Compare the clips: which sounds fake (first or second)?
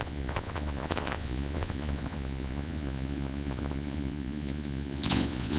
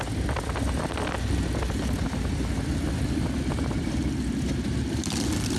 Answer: first